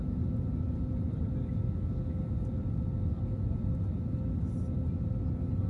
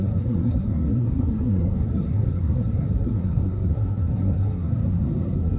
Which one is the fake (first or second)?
second